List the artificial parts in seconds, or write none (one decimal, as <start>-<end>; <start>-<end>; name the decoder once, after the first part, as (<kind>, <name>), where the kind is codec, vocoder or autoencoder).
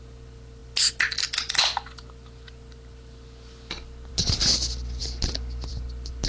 none